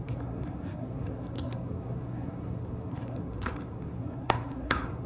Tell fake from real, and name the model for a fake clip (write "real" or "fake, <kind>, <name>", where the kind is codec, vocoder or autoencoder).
fake, codec, SNAC